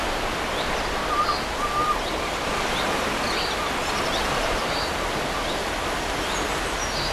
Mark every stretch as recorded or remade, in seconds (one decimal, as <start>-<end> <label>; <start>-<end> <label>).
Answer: 0.0-1.8 recorded; 1.8-2.5 remade; 2.5-4.2 recorded; 4.2-5.2 remade; 5.2-7.1 recorded